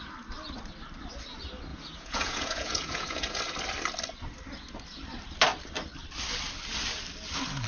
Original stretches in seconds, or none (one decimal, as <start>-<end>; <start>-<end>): 0.0-1.7; 3.4-7.7